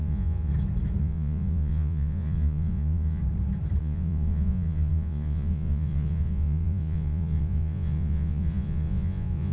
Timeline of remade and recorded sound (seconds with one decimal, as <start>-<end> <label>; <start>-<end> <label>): 0.0-0.5 remade; 0.5-1.0 recorded; 1.0-3.2 remade; 3.2-3.8 recorded; 3.8-9.5 remade